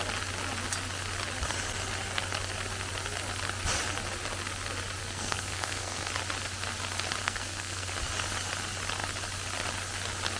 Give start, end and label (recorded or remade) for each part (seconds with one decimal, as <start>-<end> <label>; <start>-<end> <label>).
0.0-5.0 recorded; 5.0-6.1 remade; 6.1-7.2 recorded; 7.2-7.9 remade; 7.9-10.4 recorded